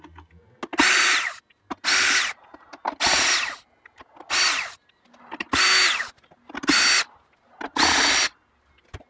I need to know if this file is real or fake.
real